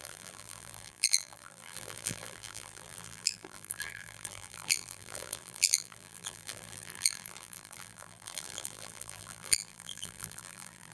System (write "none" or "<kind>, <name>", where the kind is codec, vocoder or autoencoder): vocoder, BigVGAN v2